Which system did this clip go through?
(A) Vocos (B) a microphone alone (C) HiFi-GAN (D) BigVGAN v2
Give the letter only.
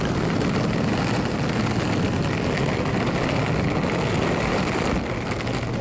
B